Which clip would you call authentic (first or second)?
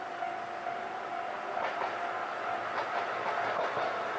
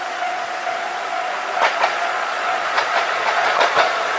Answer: first